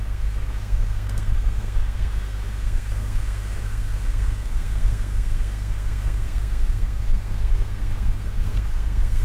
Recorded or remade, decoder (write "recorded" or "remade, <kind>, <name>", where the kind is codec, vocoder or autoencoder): remade, codec, SNAC